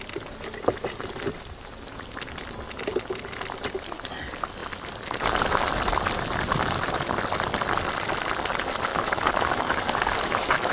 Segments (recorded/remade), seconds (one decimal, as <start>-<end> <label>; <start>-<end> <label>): 0.0-8.9 recorded; 8.9-10.7 remade